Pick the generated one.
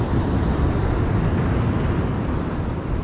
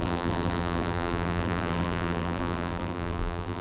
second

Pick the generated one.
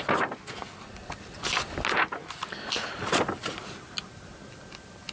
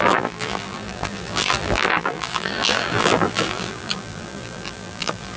second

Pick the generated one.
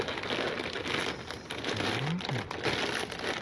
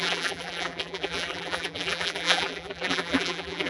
second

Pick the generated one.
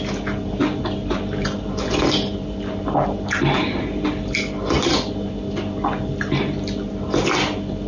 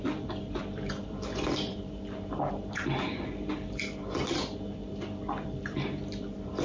second